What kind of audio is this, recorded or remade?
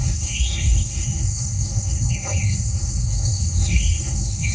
remade